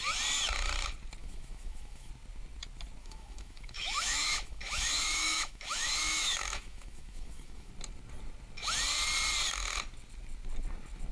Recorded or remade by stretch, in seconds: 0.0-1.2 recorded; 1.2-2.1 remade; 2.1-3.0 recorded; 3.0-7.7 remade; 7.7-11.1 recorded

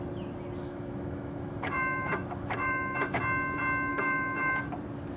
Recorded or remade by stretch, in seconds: 0.0-0.6 recorded; 0.6-3.2 remade; 3.2-3.9 recorded; 3.9-4.7 remade; 4.7-5.2 recorded